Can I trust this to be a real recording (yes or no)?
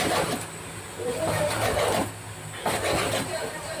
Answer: yes